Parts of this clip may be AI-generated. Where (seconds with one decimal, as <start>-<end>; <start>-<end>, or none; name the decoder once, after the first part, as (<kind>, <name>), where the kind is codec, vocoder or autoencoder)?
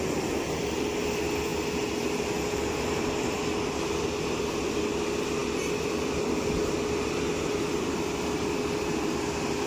none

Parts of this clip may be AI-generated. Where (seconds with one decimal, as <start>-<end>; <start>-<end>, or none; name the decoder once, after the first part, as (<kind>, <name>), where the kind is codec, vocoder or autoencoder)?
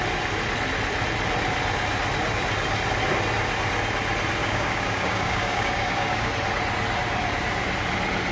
4.4-6.3 (codec, DAC)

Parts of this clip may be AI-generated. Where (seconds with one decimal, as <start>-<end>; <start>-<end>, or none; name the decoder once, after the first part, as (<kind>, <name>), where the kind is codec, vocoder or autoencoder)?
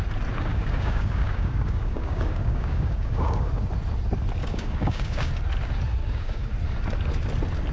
0.5-3.5 (codec, DAC); 4.4-5.3; 6.0-6.5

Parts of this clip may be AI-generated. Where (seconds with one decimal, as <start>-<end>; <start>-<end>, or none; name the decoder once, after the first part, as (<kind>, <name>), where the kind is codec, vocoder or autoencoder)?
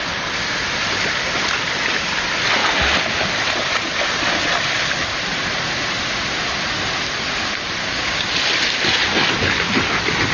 7.8-8.3 (codec, DAC)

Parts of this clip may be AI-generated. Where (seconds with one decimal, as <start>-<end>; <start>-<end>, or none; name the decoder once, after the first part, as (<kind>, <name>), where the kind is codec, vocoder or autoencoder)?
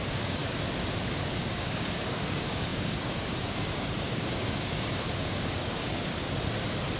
0.0-0.4 (codec, DAC); 1.4-6.2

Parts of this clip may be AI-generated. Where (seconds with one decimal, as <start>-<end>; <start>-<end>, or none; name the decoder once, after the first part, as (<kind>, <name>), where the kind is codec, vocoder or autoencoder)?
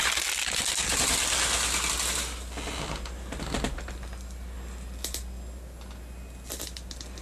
none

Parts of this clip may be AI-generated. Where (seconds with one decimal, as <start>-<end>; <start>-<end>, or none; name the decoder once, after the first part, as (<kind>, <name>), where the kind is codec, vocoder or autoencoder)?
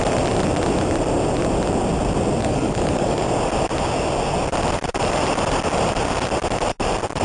2.4-3.3 (codec, DAC)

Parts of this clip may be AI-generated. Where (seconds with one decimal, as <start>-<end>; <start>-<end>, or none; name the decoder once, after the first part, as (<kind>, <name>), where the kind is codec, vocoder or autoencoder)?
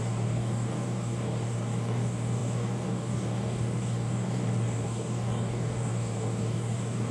0.0-7.1 (codec, DAC)